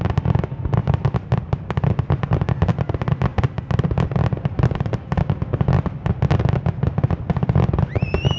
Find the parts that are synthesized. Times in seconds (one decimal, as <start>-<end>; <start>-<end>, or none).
none

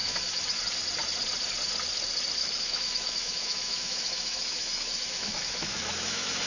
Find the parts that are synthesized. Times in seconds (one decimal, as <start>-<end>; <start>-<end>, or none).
0.0-0.6; 2.4-6.5

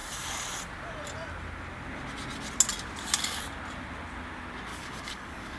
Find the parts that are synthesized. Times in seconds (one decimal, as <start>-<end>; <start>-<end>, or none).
4.7-5.6